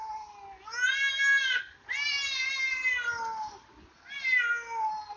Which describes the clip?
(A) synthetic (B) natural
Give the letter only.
B